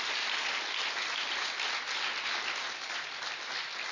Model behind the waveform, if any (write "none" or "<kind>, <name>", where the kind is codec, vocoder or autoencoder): none